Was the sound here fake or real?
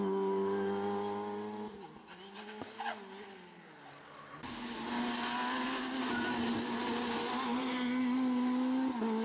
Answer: real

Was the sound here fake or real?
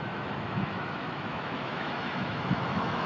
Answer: fake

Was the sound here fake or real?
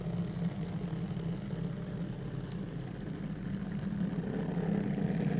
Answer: real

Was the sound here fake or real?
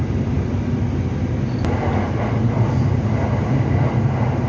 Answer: real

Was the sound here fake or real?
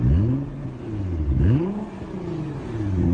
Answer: real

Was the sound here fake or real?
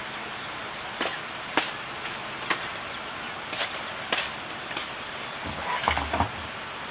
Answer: real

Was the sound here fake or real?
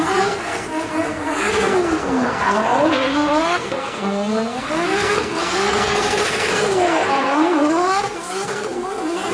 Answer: fake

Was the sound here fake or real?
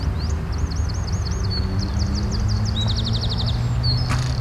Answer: real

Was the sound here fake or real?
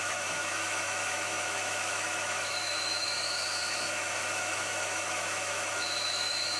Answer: fake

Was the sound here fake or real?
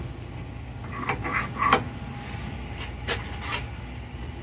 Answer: real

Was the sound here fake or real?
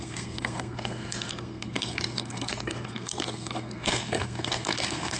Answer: fake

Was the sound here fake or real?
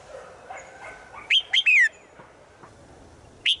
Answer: real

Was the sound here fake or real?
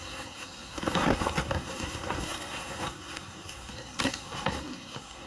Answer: fake